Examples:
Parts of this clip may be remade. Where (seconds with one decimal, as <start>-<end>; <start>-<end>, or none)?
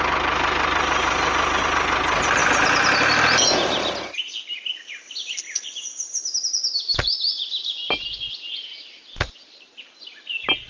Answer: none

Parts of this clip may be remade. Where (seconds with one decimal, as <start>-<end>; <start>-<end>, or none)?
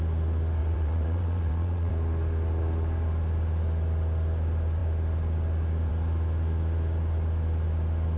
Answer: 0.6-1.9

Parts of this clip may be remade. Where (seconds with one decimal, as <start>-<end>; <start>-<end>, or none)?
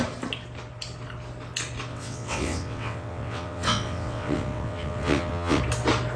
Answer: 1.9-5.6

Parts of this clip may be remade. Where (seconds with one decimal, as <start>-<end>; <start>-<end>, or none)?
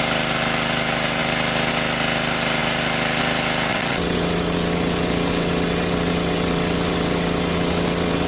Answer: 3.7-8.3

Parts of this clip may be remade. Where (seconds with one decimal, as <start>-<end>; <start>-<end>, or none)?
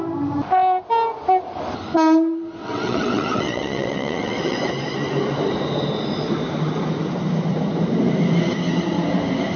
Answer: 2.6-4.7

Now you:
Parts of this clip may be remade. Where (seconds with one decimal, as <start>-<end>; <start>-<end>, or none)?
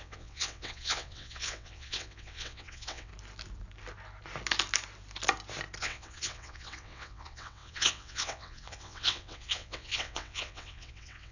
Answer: 0.0-3.1; 5.8-11.3